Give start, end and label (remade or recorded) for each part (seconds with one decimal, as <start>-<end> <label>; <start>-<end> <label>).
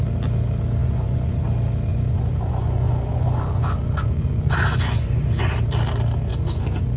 0.0-0.8 recorded; 0.8-1.4 remade; 1.4-1.9 recorded; 1.9-5.5 remade; 5.5-6.3 recorded; 6.3-7.0 remade